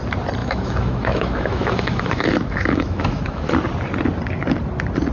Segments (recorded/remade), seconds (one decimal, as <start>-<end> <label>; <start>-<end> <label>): 0.0-0.4 recorded; 0.4-3.5 remade; 3.5-5.1 recorded

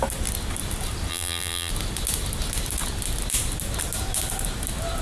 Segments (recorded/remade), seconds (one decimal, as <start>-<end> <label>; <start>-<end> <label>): 0.0-1.1 recorded; 1.1-1.7 remade; 1.7-5.0 recorded

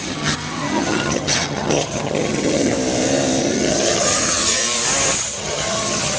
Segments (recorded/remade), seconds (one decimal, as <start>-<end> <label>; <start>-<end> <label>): 0.0-2.7 remade; 2.7-3.4 recorded; 3.4-4.6 remade; 4.6-5.2 recorded; 5.2-6.2 remade

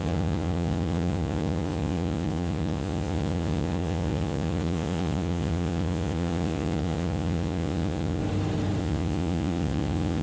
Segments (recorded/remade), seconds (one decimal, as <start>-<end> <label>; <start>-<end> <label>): 0.0-8.2 remade; 8.2-8.8 recorded; 8.8-10.2 remade

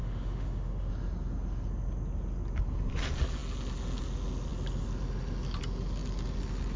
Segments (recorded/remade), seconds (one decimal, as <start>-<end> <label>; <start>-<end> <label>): 0.0-0.9 remade; 0.9-6.8 recorded

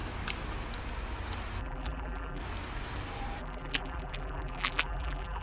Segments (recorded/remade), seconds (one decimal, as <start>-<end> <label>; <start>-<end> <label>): 0.0-1.6 recorded; 1.6-2.4 remade; 2.4-3.4 recorded; 3.4-5.4 remade

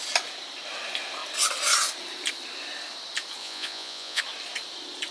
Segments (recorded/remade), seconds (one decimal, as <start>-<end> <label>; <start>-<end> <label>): 0.0-3.4 recorded; 3.4-4.2 remade; 4.2-5.1 recorded